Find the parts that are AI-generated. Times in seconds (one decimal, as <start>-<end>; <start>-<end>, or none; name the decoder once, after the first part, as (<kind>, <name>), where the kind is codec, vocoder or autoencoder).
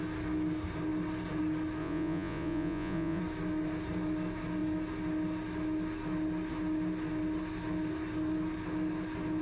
1.8-3.2 (vocoder, Vocos)